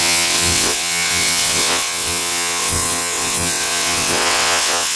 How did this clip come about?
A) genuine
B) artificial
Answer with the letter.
B